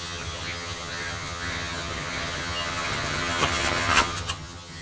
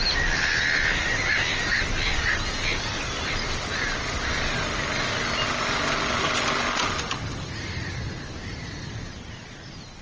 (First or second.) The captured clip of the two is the second